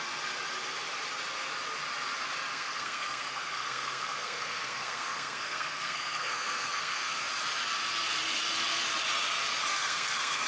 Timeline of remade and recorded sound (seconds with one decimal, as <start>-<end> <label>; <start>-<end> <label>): 0.0-2.5 recorded; 2.5-7.2 remade; 7.2-9.7 recorded; 9.7-10.5 remade